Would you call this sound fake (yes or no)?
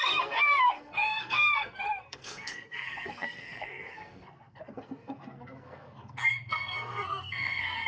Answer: yes